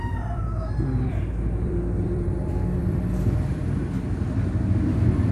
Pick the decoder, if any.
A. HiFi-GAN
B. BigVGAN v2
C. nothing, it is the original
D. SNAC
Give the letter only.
B